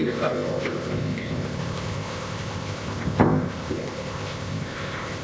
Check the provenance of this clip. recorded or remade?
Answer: remade